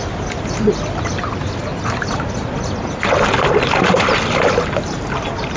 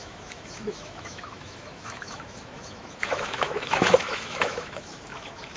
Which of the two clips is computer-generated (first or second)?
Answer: second